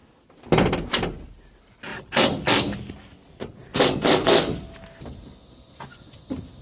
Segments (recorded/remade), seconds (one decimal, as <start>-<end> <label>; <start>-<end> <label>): 0.0-1.9 recorded; 1.9-2.5 remade; 2.5-6.6 recorded